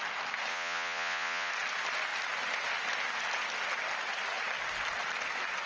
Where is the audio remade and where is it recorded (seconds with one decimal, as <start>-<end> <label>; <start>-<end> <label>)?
0.0-0.5 recorded; 0.5-1.5 remade; 1.5-5.7 recorded